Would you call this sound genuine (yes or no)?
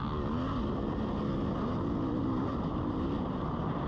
yes